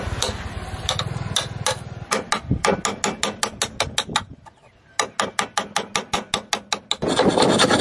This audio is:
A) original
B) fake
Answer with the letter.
A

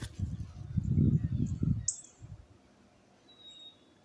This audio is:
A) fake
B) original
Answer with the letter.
B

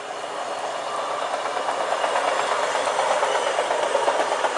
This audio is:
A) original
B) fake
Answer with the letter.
A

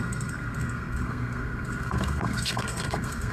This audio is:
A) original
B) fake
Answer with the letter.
B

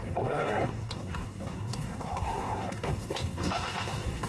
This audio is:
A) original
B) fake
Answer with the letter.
B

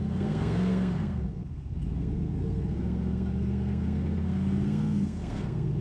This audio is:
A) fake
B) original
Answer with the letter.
A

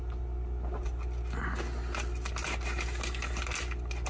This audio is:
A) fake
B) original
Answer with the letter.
B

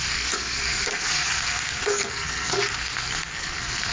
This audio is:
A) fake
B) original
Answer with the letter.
A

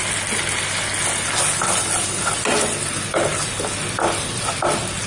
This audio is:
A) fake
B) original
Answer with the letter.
B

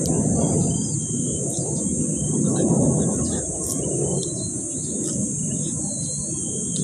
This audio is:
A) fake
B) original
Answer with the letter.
B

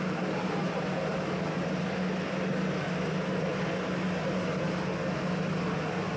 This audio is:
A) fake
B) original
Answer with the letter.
B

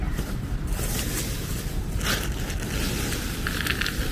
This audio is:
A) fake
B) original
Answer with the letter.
B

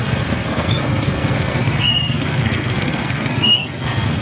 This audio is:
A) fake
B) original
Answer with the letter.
A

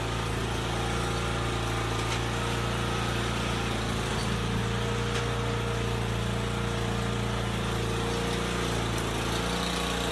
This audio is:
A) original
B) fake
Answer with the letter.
A